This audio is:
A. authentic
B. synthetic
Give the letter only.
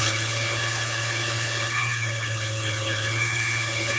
B